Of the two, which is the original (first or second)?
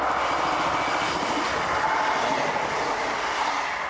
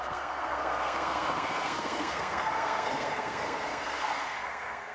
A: first